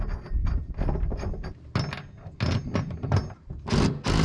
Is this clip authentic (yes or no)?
yes